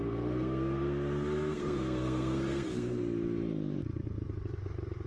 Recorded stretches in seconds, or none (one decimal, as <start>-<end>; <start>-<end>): 3.0-5.1

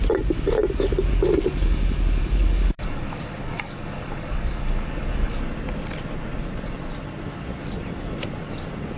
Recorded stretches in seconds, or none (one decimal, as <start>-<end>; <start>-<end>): 0.0-1.1; 5.4-9.0